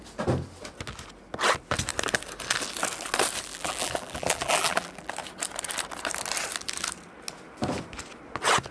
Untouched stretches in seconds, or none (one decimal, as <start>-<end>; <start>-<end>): 0.0-3.5; 5.1-8.7